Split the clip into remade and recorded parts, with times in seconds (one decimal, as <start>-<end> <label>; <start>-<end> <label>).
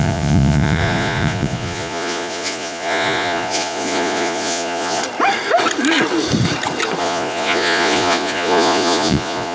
0.0-5.0 remade; 5.0-7.0 recorded; 7.0-9.5 remade